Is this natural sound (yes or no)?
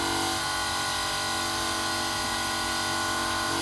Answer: yes